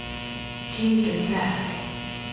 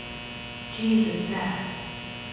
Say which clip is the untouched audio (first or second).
second